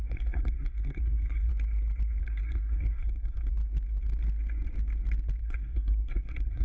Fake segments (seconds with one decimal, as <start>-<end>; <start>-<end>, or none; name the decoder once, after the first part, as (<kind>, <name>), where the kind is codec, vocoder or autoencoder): 0.0-1.5 (codec, SNAC); 2.2-3.5; 5.4-6.6